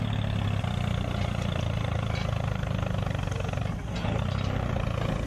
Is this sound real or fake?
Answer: real